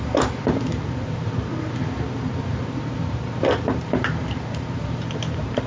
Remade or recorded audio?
remade